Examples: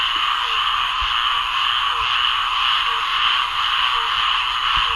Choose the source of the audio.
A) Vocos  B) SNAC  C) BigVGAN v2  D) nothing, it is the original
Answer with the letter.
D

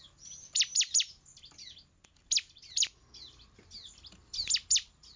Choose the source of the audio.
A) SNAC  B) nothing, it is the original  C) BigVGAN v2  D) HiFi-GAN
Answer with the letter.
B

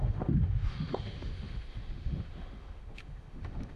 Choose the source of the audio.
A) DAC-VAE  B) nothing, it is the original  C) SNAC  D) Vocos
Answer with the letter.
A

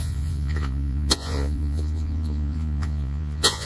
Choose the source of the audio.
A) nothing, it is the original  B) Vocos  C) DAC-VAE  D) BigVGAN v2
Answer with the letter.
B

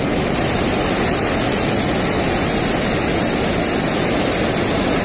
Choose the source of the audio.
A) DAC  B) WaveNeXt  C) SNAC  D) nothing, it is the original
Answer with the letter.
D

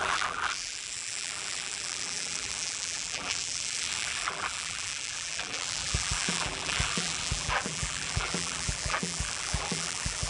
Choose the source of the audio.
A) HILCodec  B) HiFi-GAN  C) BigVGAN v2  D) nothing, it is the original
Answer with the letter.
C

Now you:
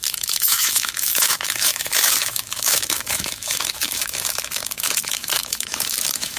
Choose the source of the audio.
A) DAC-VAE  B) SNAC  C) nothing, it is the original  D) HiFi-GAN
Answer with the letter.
A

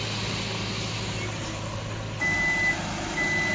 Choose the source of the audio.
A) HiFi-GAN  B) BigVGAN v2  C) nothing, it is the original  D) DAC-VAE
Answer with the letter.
C